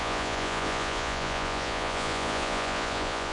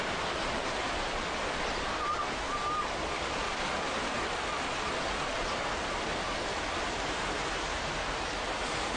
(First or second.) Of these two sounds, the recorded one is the second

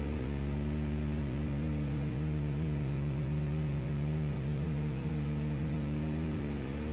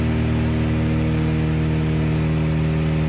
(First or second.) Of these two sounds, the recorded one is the second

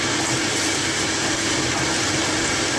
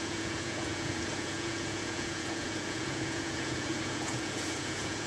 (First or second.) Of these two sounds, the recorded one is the first